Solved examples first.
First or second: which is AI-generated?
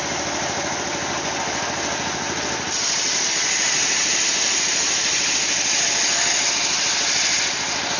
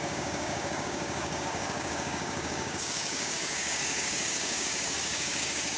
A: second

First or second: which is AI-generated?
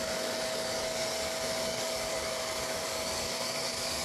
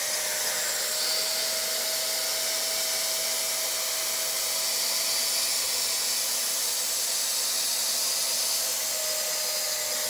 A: first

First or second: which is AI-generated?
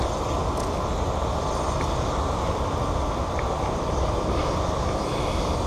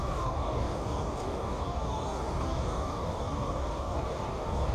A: second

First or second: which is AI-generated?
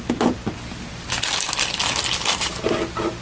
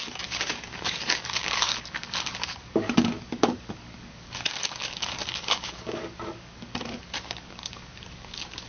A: second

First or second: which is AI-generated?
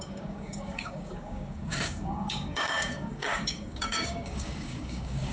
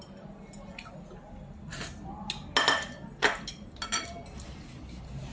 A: first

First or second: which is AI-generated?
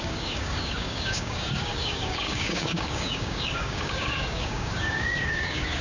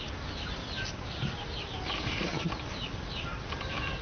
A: first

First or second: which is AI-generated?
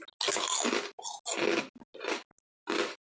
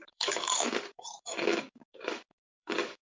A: second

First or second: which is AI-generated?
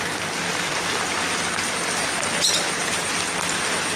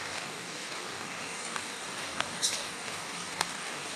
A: second